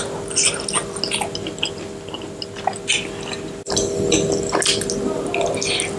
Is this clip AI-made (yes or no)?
no